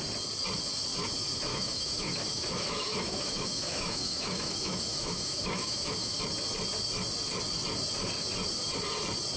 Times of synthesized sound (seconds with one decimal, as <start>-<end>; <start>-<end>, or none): 1.5-6.2